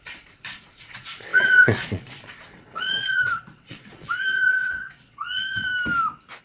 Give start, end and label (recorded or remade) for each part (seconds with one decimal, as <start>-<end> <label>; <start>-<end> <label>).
0.0-5.7 remade; 5.7-6.4 recorded